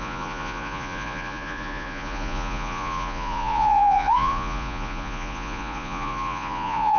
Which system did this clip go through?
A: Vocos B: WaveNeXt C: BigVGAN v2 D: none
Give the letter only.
A